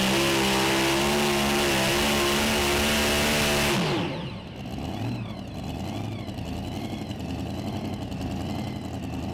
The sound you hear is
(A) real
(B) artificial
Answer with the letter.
A